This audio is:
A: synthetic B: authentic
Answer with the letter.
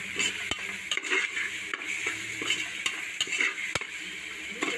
B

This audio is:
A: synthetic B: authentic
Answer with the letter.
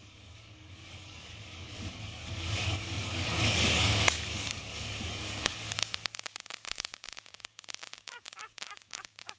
A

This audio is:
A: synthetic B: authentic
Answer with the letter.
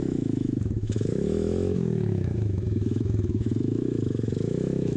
A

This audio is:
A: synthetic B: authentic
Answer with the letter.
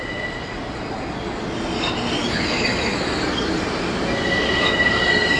B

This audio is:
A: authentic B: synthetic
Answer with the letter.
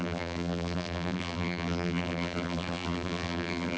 B